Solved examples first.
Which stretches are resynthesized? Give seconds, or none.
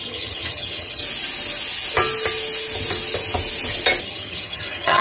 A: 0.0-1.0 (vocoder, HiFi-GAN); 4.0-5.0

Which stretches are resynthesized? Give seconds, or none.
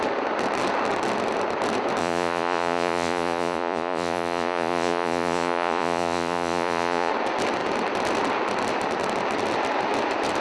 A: 2.0-7.1 (vocoder, Vocos)